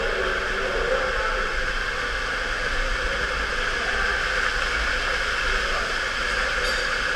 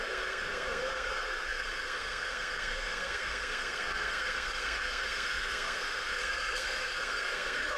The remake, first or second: second